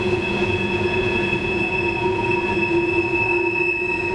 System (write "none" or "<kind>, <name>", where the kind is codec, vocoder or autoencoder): vocoder, Vocos